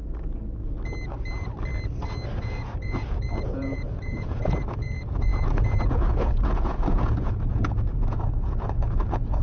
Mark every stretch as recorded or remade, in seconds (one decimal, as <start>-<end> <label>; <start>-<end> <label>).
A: 0.0-2.4 recorded; 2.4-9.4 remade